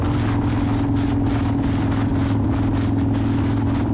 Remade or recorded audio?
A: recorded